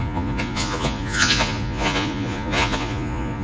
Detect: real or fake fake